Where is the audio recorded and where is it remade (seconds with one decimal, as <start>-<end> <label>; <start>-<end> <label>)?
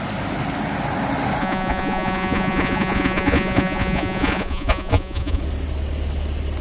0.0-1.4 recorded; 1.4-5.4 remade; 5.4-6.6 recorded